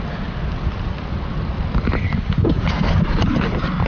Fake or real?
real